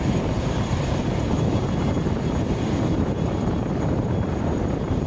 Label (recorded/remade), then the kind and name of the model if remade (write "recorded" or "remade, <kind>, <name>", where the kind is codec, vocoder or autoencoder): remade, vocoder, BigVGAN v2